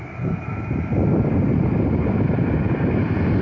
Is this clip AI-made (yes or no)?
no